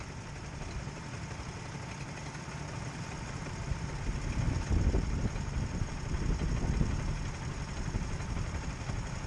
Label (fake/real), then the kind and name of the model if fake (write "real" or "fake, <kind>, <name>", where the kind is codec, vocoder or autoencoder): real